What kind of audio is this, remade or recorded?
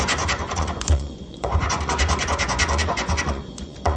remade